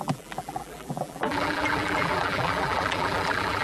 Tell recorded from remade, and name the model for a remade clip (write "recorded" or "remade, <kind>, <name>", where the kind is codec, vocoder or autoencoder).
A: remade, vocoder, BigVGAN v2